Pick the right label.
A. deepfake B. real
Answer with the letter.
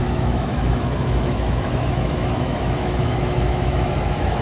A